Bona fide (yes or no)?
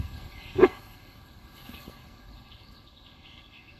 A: no